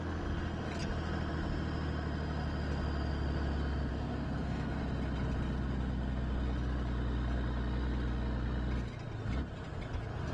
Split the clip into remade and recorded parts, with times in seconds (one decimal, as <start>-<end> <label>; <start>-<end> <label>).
0.0-3.9 recorded; 3.9-4.8 remade; 4.8-10.3 recorded